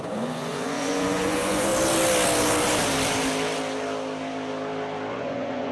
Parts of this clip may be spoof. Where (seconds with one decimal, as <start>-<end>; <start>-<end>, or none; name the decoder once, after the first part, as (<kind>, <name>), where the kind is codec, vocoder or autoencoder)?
0.0-1.7 (vocoder, Vocos); 5.1-5.7